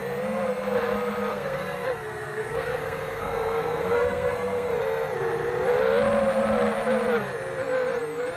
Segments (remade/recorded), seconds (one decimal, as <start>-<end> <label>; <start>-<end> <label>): 0.0-1.3 recorded; 1.3-4.7 remade; 4.7-8.4 recorded